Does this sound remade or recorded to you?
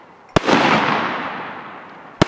recorded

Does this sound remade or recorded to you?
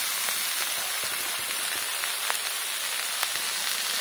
recorded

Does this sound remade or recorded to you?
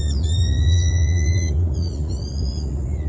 remade